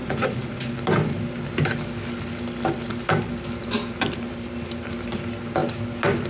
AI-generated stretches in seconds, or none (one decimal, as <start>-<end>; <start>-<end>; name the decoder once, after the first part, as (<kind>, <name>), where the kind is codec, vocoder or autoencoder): 0.0-0.6 (vocoder, Vocos)